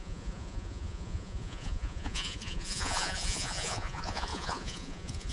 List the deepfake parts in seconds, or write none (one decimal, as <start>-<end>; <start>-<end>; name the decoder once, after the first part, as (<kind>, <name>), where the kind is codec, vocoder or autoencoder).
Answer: 0.0-5.3 (vocoder, Vocos)